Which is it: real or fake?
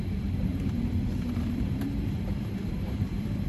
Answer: fake